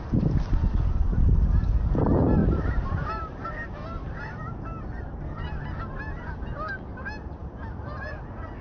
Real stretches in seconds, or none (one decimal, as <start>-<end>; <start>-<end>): 0.0-2.4; 6.3-8.6